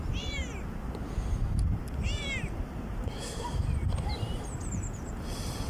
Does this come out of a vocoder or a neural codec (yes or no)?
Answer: yes